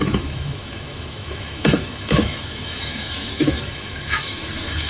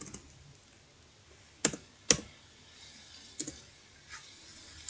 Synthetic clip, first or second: first